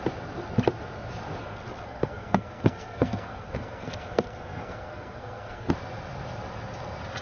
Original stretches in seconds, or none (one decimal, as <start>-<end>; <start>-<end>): 0.0-1.4; 5.7-7.2